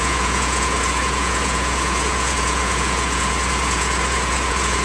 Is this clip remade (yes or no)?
yes